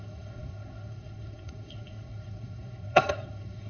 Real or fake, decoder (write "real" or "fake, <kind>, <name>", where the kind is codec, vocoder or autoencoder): fake, codec, SNAC